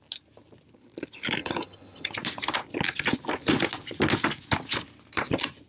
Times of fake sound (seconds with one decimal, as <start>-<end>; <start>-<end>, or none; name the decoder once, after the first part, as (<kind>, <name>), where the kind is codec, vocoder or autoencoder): 1.4-2.1 (vocoder, HiFi-GAN)